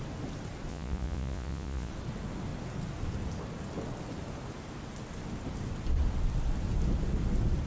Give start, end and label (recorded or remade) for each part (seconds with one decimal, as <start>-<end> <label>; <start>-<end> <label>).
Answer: 0.0-0.7 recorded; 0.7-1.9 remade; 1.9-7.7 recorded